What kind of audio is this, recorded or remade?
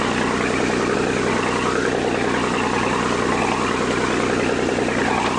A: recorded